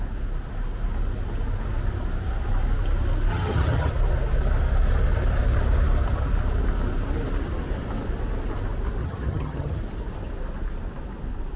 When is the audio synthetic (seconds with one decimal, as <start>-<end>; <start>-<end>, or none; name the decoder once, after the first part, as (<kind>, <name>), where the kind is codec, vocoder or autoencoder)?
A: 3.3-3.9 (vocoder, HiFi-GAN); 9.0-9.8